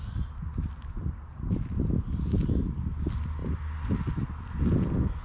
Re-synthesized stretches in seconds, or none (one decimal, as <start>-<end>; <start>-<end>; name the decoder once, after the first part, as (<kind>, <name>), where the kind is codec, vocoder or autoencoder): none